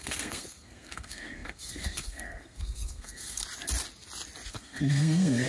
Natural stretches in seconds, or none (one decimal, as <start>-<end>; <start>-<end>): 3.4-4.5